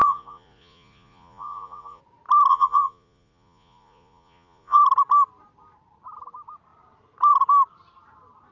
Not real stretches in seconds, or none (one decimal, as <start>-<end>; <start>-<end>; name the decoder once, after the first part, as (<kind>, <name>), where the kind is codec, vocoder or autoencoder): 0.0-2.0 (vocoder, Vocos); 2.5-4.8